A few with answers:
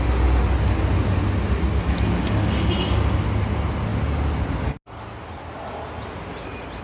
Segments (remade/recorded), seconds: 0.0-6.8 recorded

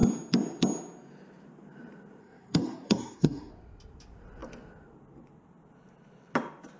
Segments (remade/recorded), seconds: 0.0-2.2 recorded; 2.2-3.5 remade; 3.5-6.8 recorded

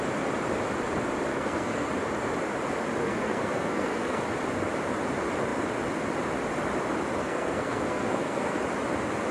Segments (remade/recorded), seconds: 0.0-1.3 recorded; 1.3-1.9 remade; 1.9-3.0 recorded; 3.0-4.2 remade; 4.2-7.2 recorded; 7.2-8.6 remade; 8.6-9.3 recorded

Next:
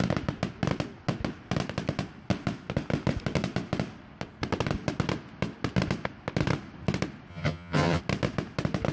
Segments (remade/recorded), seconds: 0.0-7.3 recorded; 7.3-8.0 remade; 8.0-8.9 recorded